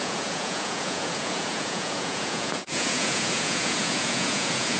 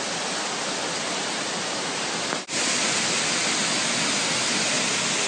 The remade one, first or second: first